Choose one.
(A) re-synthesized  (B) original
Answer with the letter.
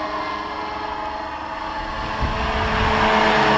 B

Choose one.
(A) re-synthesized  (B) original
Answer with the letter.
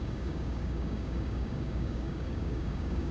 A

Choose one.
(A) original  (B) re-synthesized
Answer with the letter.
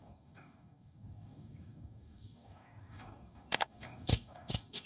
B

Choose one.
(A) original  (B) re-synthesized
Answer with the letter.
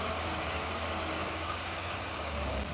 B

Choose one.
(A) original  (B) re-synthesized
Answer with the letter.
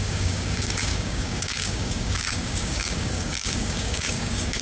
B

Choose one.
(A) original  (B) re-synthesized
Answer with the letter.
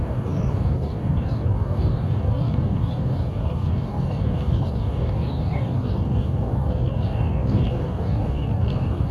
B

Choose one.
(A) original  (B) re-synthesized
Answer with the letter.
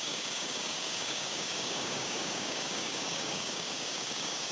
B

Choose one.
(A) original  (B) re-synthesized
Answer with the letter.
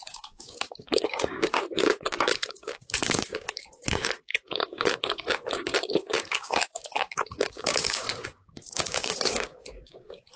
B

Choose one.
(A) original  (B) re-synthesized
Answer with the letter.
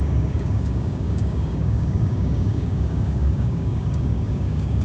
B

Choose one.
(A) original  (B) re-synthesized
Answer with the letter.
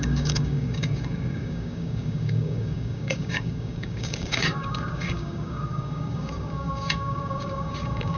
B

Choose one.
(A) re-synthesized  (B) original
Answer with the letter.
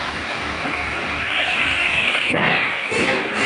A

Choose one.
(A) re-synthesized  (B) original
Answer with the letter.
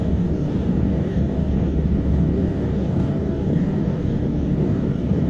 A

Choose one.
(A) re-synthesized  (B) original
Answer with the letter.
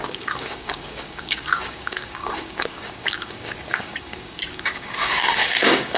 A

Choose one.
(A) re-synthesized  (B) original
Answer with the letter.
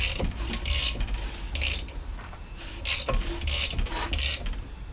B